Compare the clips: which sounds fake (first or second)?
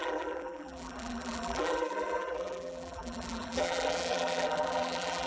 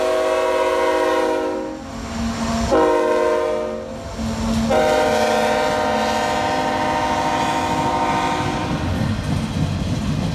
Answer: first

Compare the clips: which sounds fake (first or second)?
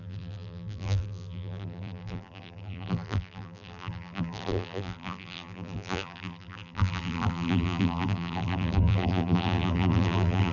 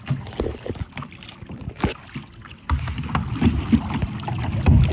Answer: first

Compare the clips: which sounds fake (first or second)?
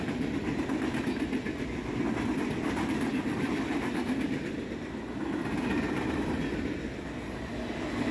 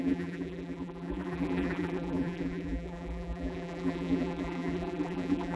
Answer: second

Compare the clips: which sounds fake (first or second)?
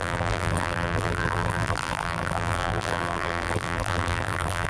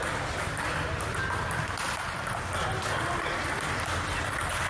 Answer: first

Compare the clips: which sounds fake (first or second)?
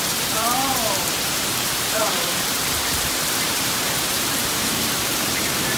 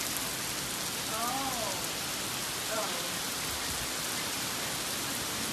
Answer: first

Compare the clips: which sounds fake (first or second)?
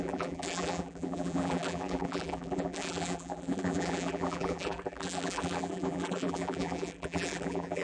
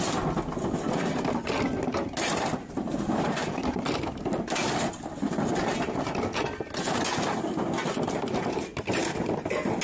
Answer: first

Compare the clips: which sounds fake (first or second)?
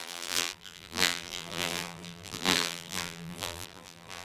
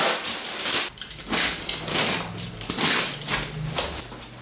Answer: first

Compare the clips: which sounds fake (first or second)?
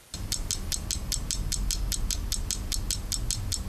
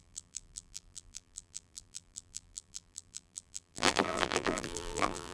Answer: second